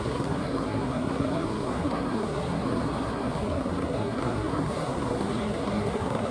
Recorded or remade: remade